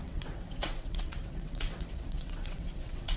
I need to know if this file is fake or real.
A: fake